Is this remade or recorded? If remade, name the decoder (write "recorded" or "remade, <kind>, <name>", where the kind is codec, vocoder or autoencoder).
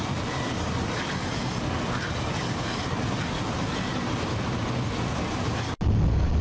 recorded